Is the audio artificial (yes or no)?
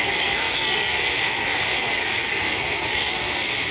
yes